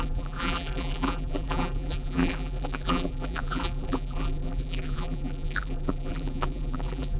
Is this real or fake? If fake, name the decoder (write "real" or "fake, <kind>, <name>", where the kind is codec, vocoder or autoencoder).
fake, vocoder, BigVGAN v2